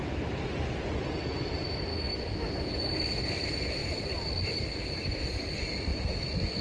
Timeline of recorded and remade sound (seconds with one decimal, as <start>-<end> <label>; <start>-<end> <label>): 0.0-1.9 recorded; 1.9-3.2 remade; 3.2-5.9 recorded; 5.9-6.6 remade